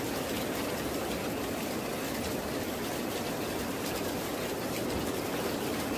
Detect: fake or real real